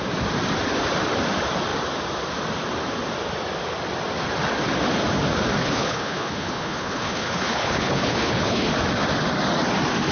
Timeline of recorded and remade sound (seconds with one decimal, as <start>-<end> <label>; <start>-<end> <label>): 0.0-5.6 recorded; 5.6-8.7 remade; 8.7-10.1 recorded